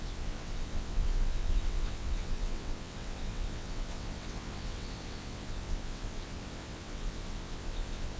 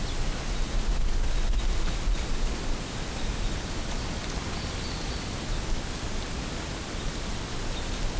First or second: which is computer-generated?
first